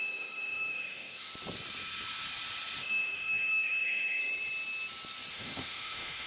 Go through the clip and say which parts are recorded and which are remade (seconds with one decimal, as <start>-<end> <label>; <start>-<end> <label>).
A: 0.0-1.3 remade; 1.3-2.8 recorded; 2.8-4.2 remade; 4.2-5.3 recorded; 5.3-6.3 remade